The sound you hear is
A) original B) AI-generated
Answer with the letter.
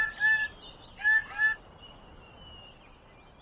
A